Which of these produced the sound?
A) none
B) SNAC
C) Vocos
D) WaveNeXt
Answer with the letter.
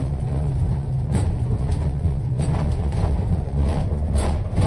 C